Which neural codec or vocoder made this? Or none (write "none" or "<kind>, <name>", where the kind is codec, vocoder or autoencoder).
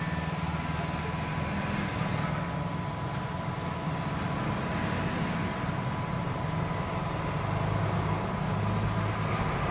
none